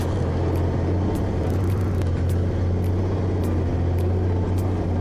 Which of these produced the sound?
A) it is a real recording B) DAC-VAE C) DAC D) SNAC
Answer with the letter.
A